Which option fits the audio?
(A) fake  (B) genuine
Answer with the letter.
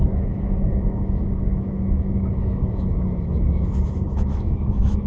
A